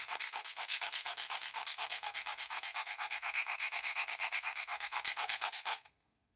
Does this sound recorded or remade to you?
remade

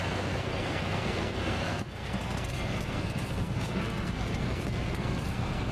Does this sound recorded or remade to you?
remade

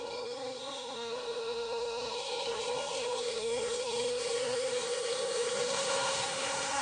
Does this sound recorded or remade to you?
remade